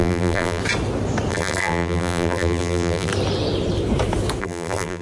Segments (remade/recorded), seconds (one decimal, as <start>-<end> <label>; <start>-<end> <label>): 0.0-0.6 remade; 0.6-1.3 recorded; 1.3-3.1 remade; 3.1-4.4 recorded; 4.4-5.0 remade